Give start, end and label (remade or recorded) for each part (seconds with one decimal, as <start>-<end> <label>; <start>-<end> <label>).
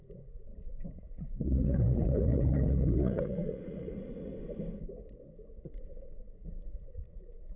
0.0-4.3 remade; 4.3-5.7 recorded; 5.7-7.6 remade